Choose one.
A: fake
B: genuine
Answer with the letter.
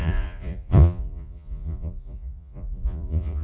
A